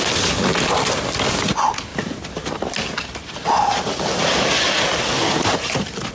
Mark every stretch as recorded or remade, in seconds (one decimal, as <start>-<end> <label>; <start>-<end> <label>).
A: 0.0-6.1 recorded